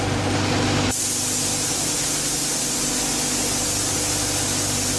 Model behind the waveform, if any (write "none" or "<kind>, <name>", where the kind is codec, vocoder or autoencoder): none